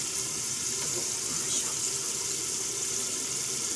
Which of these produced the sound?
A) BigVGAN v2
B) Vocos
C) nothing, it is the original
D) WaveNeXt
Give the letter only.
C